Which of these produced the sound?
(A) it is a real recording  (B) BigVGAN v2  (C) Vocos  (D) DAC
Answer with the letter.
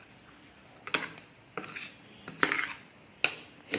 A